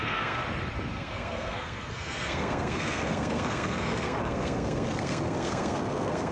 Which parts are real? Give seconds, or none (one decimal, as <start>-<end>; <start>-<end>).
0.4-0.9